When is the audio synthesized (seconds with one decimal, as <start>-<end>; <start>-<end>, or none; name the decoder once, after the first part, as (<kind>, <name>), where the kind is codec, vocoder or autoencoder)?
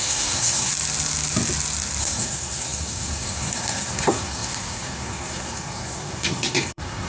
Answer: 0.0-0.7 (codec, SNAC); 2.0-7.1